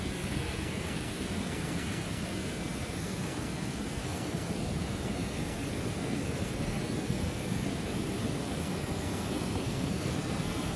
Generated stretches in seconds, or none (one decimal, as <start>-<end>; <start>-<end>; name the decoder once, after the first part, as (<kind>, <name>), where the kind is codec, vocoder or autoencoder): 0.0-10.8 (codec, SNAC)